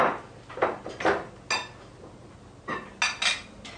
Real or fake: real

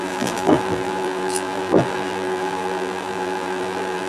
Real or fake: fake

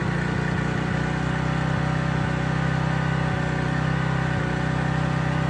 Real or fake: real